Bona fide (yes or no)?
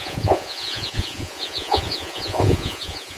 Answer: no